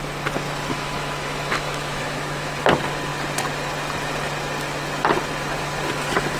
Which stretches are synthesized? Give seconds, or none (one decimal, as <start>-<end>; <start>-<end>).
0.7-2.6